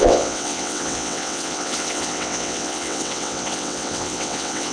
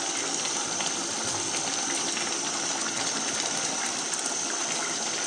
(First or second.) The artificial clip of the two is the first